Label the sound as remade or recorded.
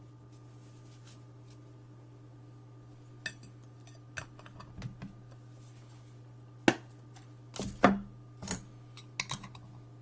recorded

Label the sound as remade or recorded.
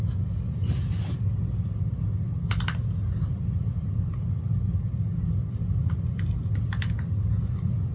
recorded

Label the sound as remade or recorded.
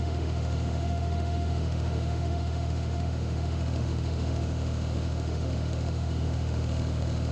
remade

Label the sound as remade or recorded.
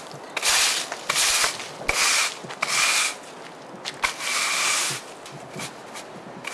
recorded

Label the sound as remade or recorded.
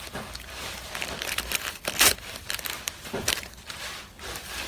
remade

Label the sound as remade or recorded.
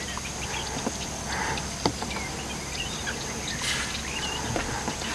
recorded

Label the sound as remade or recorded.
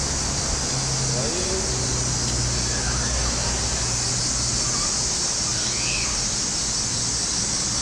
recorded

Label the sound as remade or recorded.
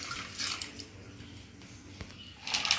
recorded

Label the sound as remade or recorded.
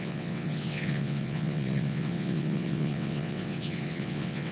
remade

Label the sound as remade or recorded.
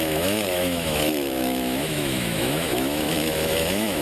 remade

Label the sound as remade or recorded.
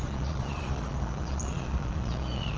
remade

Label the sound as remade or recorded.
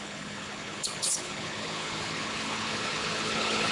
remade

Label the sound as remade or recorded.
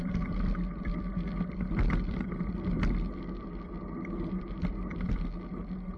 recorded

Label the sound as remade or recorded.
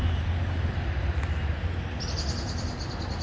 recorded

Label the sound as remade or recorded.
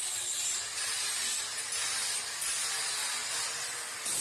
recorded